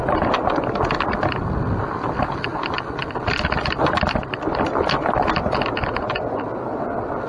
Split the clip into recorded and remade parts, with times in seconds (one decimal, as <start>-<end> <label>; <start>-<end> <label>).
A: 0.0-7.3 recorded